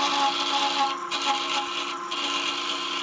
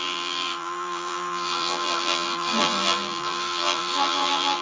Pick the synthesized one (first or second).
second